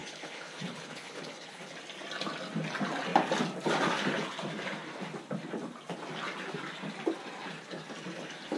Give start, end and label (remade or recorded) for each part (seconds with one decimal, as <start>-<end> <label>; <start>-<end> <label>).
0.0-1.7 remade; 1.7-8.6 recorded